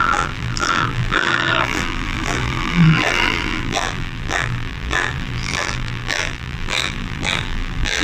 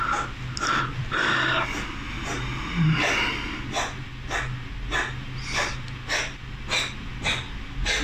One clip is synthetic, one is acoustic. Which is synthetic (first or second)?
first